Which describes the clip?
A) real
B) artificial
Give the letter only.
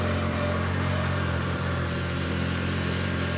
B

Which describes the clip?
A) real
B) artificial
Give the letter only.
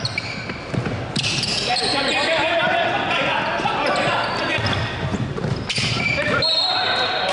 A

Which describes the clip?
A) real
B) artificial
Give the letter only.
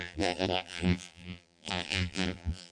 B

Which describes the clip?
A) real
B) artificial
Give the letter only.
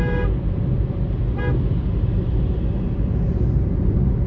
A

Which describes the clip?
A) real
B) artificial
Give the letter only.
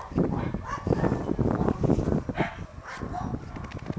A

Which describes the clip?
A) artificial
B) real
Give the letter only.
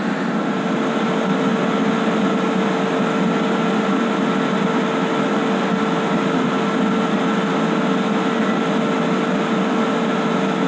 B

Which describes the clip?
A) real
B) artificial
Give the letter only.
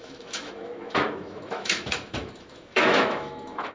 B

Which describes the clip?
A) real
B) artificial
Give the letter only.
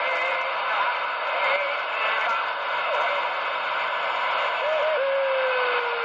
A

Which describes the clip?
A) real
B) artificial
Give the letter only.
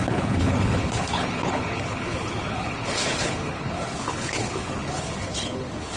B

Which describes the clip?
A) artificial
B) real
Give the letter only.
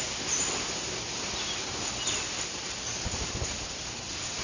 B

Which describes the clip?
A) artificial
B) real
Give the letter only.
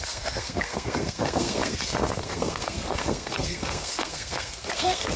A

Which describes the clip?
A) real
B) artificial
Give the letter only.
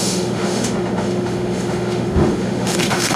B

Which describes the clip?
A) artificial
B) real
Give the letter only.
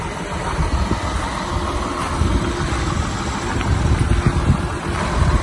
B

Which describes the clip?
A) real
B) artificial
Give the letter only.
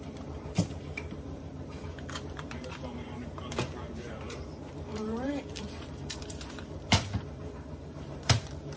B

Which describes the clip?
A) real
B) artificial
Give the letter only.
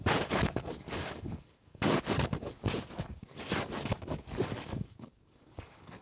B